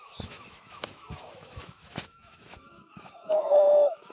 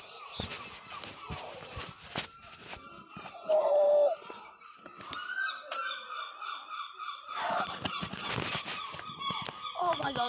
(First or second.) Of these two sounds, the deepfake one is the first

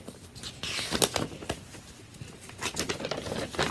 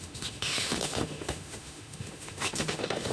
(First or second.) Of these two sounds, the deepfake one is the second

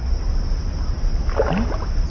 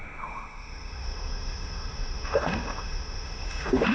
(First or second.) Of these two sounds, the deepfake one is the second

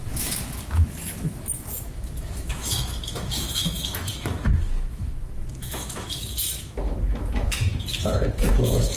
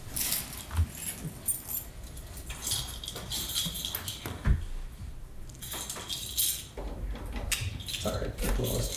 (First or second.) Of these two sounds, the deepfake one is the first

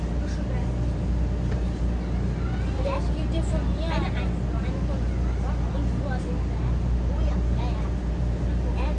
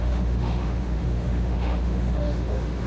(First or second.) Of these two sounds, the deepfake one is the second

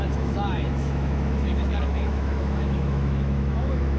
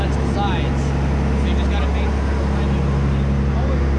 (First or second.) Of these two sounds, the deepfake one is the first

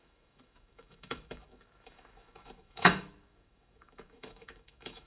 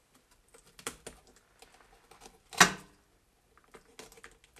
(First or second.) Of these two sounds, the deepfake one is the first